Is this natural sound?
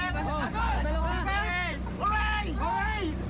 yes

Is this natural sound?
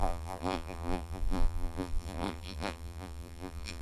no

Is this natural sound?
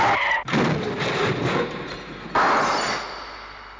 yes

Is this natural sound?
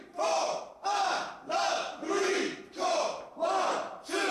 yes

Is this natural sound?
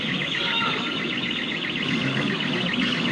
no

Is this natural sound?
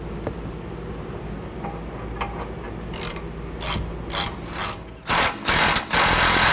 yes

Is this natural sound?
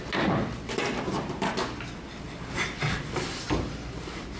yes